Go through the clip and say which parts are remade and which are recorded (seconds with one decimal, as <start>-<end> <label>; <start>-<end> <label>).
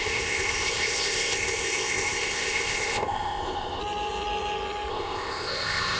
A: 0.0-3.8 remade; 3.8-4.9 recorded; 4.9-6.0 remade